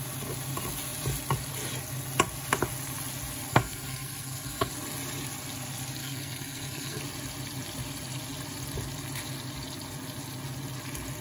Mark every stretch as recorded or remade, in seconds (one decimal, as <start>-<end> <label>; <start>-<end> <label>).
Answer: 0.0-3.5 recorded; 3.5-4.7 remade; 4.7-6.0 recorded; 6.0-7.0 remade; 7.0-11.2 recorded